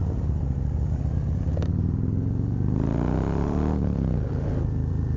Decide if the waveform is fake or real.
fake